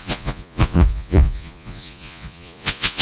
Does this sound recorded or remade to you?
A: remade